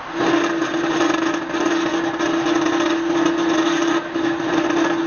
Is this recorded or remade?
recorded